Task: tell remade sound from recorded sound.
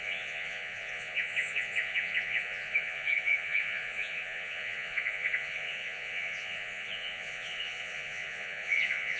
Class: remade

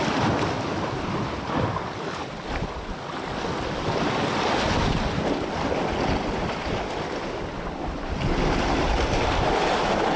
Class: recorded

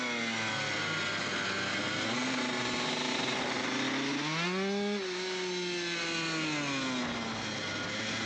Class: recorded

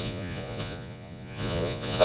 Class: remade